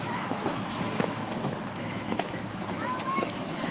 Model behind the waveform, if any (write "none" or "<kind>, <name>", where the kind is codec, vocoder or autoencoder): autoencoder, DAC-VAE